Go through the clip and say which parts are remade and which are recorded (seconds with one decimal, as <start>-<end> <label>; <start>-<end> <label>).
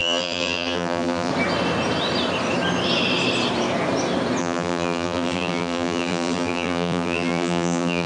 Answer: 0.0-1.3 remade; 1.3-4.4 recorded; 4.4-8.1 remade